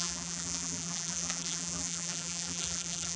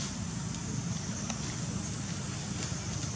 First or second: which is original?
second